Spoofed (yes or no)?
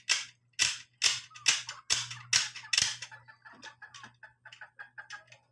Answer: no